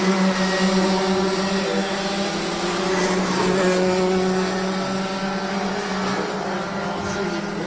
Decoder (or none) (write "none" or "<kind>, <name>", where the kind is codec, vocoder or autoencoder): none